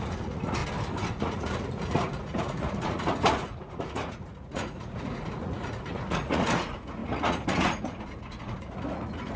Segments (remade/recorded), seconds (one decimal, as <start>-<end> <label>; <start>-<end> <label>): 0.0-0.6 remade; 0.6-1.1 recorded; 1.1-9.4 remade